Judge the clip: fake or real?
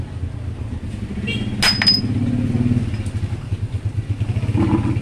real